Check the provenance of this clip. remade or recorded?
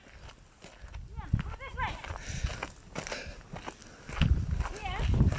recorded